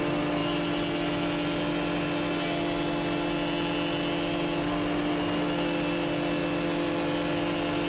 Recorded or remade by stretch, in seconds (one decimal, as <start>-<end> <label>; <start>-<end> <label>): 0.0-7.9 recorded